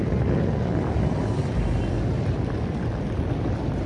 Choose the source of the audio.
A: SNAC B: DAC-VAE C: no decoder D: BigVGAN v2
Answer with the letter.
C